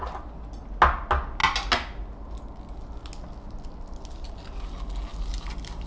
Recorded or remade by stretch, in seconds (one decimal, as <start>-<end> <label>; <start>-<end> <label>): 0.0-5.9 recorded